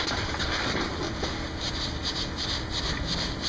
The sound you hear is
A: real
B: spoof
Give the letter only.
A